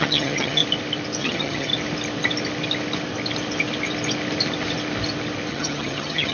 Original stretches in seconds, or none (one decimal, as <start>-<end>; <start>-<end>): 0.6-1.2; 1.7-5.5